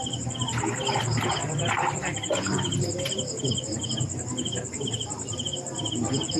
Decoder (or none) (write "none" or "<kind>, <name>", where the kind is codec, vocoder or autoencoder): none